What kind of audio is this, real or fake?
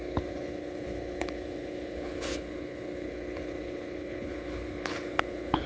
fake